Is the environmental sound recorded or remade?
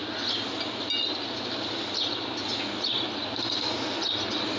recorded